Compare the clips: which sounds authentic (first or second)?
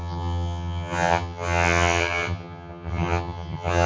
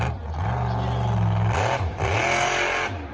second